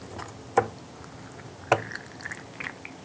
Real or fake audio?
real